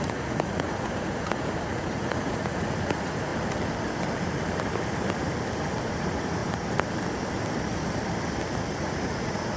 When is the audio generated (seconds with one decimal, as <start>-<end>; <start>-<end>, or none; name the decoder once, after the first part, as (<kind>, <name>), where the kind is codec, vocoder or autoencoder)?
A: 0.0-3.3 (vocoder, Vocos); 5.8-6.4; 8.7-9.6